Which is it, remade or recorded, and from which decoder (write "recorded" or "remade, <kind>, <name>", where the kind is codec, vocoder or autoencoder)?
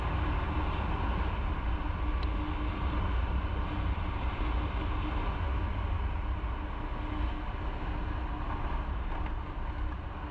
recorded